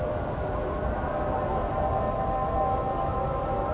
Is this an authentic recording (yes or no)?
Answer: yes